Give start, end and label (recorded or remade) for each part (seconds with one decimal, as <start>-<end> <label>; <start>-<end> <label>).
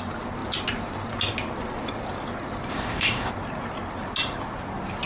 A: 0.0-2.7 recorded; 2.7-3.3 remade; 3.3-5.1 recorded